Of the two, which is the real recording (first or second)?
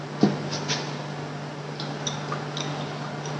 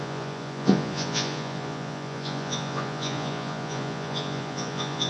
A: first